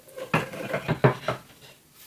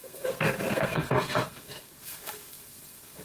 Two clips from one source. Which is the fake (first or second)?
second